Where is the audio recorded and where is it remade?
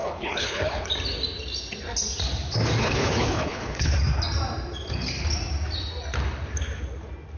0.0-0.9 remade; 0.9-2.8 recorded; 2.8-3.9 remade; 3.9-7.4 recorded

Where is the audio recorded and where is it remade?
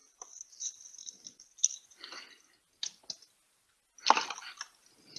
0.0-5.2 recorded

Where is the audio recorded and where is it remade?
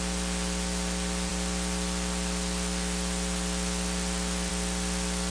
0.0-5.3 recorded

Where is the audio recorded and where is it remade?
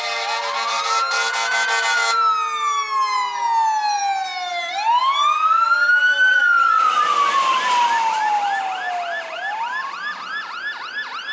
0.0-11.3 recorded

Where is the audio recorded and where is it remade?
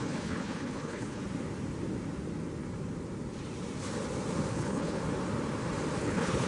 0.0-1.2 remade; 1.2-4.5 recorded; 4.5-5.0 remade; 5.0-6.0 recorded; 6.0-6.5 remade